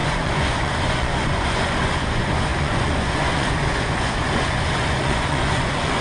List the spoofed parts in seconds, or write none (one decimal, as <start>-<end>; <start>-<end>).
0.0-6.0